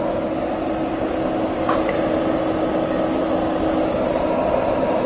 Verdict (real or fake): real